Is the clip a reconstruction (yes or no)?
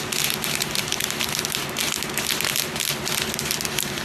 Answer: no